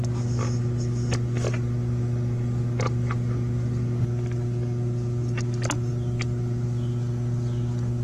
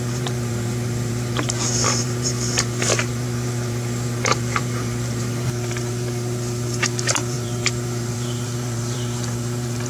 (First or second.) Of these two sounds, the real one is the first